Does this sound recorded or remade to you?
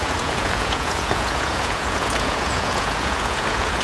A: remade